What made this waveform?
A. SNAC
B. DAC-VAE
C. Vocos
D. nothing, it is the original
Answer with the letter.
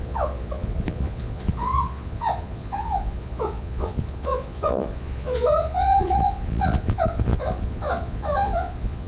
C